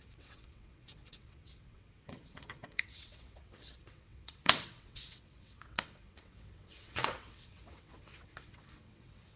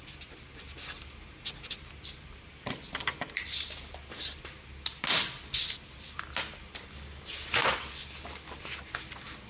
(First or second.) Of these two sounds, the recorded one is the second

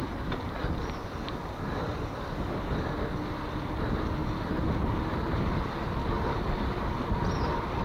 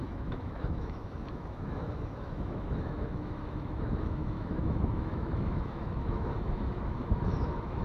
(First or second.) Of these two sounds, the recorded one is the first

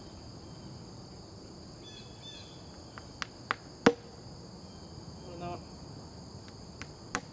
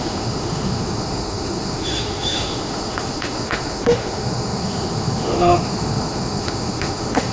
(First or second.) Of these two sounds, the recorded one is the first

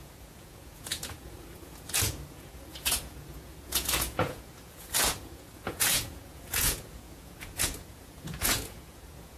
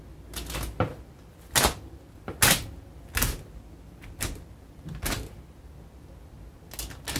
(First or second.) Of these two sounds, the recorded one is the second